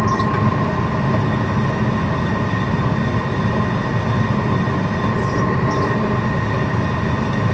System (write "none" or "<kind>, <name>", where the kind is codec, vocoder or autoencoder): none